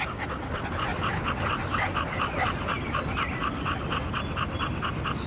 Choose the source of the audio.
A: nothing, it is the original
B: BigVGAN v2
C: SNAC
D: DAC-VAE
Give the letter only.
A